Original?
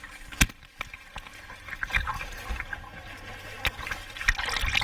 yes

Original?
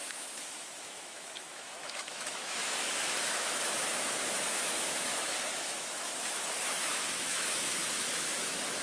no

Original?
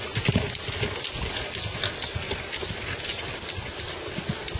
yes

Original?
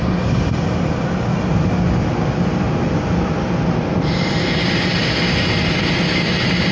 yes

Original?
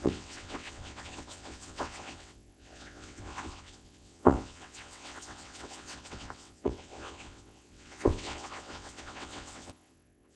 no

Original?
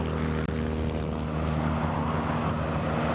yes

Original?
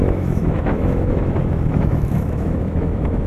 no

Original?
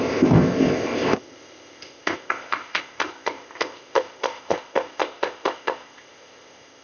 no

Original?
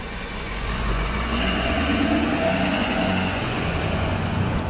no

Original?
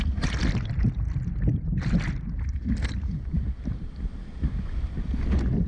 yes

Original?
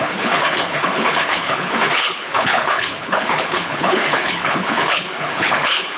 no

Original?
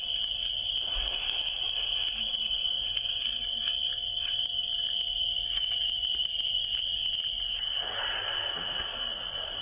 no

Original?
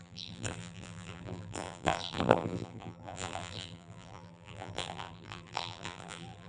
no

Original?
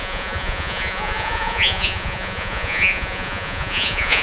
no